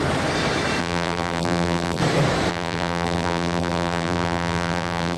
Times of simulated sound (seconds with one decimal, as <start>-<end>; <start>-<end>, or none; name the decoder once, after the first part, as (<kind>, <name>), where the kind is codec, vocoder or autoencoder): 0.8-2.0 (vocoder, BigVGAN v2); 2.5-5.2